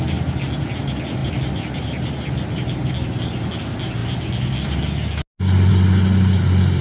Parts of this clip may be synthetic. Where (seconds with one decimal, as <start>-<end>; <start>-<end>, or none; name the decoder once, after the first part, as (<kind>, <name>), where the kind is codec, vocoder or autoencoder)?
none